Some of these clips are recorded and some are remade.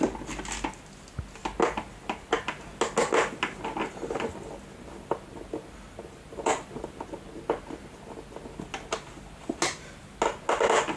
recorded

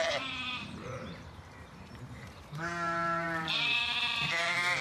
remade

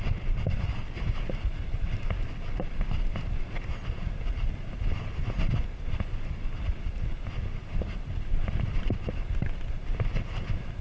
recorded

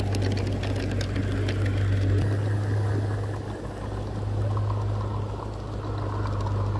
recorded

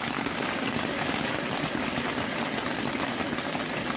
recorded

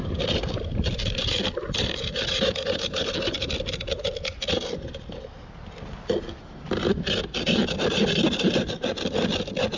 recorded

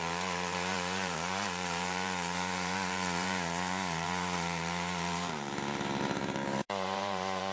remade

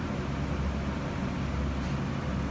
recorded